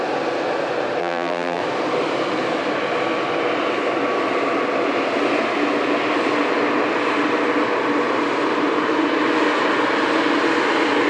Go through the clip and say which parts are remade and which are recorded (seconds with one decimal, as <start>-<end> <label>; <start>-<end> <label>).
0.0-1.0 recorded; 1.0-1.6 remade; 1.6-11.1 recorded